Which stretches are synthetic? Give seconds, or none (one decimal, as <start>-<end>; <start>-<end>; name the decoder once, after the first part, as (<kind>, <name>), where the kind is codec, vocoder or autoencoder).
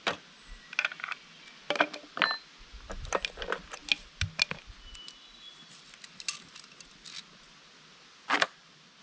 none